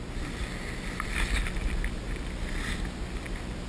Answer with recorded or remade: recorded